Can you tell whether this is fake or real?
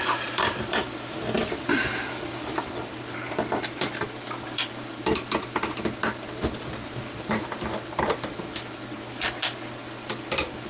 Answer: fake